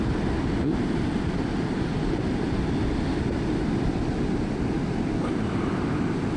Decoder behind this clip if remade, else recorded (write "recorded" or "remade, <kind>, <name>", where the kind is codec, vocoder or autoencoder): recorded